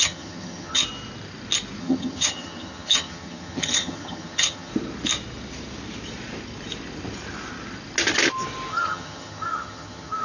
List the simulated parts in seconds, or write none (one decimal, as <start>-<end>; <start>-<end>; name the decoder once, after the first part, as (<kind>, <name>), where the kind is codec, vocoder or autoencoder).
0.0-0.8 (vocoder, HiFi-GAN); 1.8-4.7; 8.7-10.2